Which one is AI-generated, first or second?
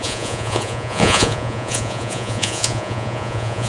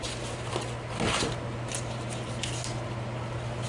first